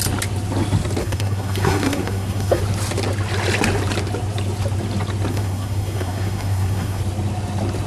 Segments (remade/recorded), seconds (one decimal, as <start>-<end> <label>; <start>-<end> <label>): 0.0-1.0 recorded; 1.0-2.6 remade; 2.6-5.3 recorded; 5.3-7.0 remade; 7.0-7.9 recorded